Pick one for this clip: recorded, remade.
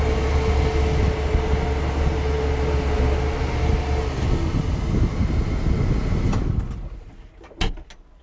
recorded